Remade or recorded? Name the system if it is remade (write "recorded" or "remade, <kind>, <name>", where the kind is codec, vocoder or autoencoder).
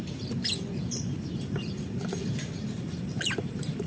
remade, vocoder, BigVGAN v2